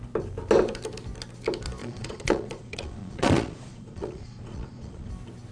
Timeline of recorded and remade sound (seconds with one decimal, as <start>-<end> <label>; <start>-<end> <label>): 0.0-1.8 recorded; 1.8-5.1 remade; 5.1-5.5 recorded